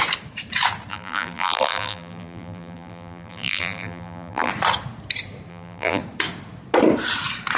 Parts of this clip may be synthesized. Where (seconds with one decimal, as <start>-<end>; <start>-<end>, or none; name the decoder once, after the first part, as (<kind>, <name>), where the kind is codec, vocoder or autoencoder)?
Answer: 0.9-4.5 (vocoder, BigVGAN v2); 5.5-6.0